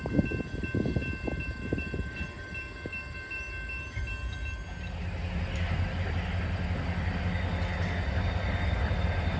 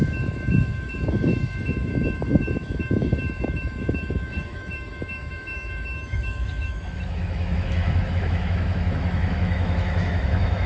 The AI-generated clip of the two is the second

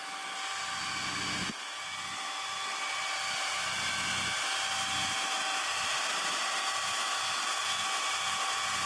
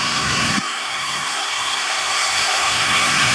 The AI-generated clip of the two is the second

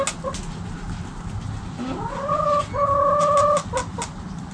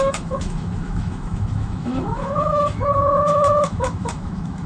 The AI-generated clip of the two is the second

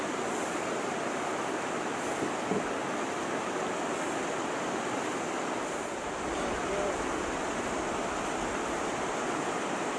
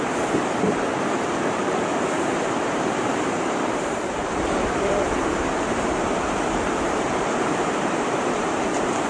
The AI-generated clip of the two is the second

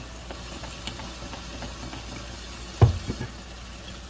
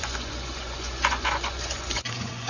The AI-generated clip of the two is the second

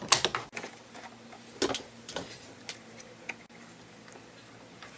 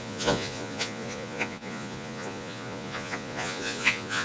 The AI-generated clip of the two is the second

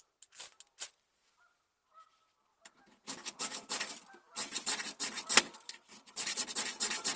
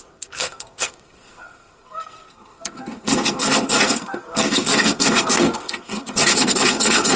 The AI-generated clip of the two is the second